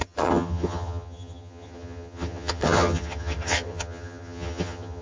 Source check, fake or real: fake